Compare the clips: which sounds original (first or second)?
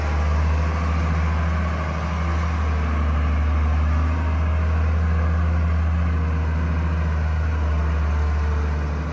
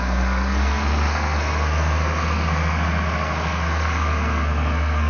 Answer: first